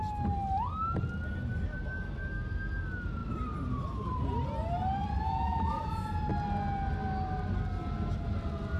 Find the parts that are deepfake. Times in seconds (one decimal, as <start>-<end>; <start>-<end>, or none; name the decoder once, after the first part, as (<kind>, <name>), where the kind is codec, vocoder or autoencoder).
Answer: 3.2-4.2 (vocoder, BigVGAN v2); 5.0-6.3